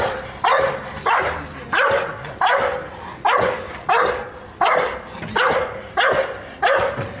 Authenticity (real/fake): real